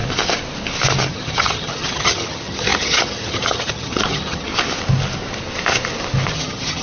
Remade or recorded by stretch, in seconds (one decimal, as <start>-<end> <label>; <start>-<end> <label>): 0.0-1.1 recorded; 1.1-4.5 remade; 4.5-6.3 recorded; 6.3-6.8 remade

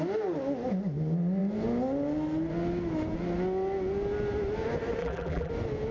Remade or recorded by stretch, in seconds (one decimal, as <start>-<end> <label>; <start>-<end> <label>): 0.0-5.0 recorded; 5.0-5.5 remade; 5.5-5.9 recorded

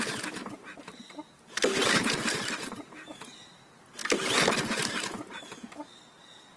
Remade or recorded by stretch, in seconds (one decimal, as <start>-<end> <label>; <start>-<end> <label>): 0.0-0.4 recorded; 0.4-1.2 remade; 1.2-1.8 recorded; 1.8-3.3 remade; 3.3-6.6 recorded

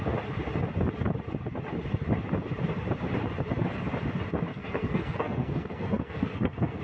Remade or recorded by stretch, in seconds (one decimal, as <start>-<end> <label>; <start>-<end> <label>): 0.0-4.5 recorded; 4.5-6.8 remade